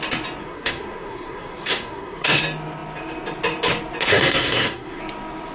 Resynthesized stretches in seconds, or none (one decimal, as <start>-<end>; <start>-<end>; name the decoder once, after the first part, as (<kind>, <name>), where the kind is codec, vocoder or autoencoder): 0.4-2.4 (codec, SNAC); 4.1-5.0